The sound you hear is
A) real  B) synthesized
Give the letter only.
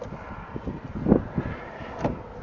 A